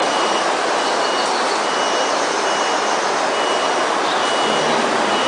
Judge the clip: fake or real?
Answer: real